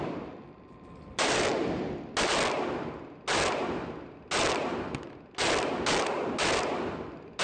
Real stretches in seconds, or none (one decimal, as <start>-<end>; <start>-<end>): 0.0-7.4